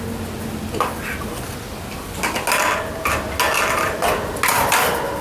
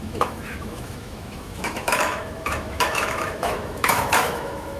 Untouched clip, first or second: first